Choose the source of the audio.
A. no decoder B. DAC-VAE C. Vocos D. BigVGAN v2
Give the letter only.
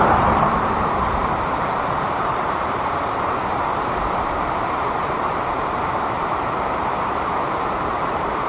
D